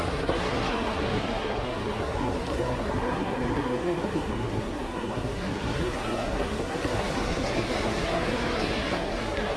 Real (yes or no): no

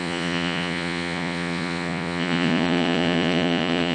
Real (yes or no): no